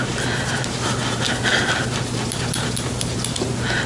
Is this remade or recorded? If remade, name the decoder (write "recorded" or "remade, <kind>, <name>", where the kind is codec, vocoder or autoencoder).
recorded